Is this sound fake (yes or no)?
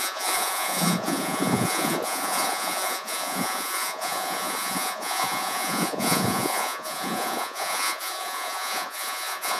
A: yes